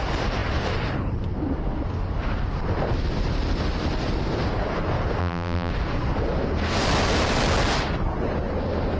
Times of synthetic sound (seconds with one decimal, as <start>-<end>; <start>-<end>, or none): 5.2-5.7